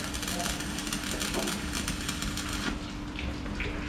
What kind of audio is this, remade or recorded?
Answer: recorded